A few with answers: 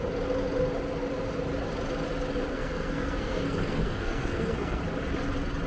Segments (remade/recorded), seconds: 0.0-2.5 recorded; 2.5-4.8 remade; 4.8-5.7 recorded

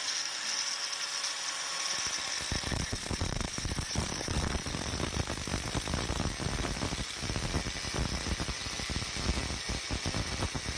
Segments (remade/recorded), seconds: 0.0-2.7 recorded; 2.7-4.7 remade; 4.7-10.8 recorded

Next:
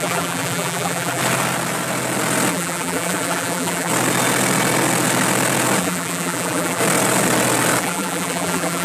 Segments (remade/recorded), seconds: 0.0-1.2 remade; 1.2-2.5 recorded; 2.5-3.9 remade; 3.9-5.8 recorded; 5.8-6.8 remade; 6.8-7.8 recorded; 7.8-8.8 remade

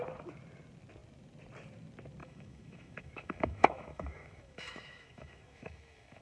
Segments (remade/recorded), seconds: 0.0-2.2 recorded; 2.2-6.2 remade

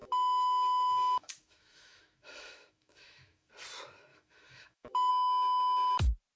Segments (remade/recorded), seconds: 0.0-3.5 remade; 3.5-4.1 recorded; 4.1-5.1 remade; 5.1-6.4 recorded

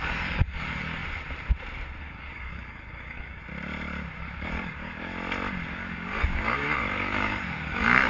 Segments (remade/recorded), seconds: 0.0-1.0 remade; 1.0-2.0 recorded; 2.0-3.4 remade; 3.4-4.2 recorded; 4.2-5.1 remade; 5.1-5.7 recorded; 5.7-8.1 remade